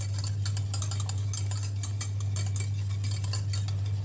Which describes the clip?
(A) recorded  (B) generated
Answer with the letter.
A